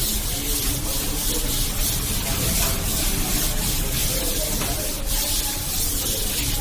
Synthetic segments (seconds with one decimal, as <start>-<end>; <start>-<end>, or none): none